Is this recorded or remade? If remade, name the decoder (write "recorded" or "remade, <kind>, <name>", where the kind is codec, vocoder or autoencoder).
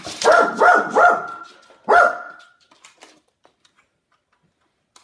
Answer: recorded